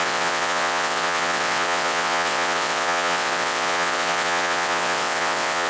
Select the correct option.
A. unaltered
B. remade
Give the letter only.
B